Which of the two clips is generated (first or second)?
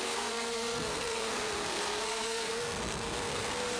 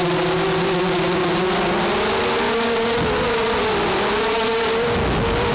first